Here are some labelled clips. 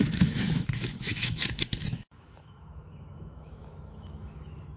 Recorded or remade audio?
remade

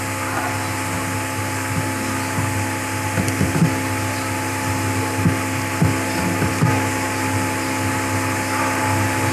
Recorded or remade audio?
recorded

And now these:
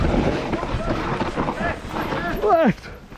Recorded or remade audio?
recorded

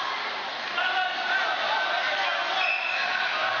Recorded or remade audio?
recorded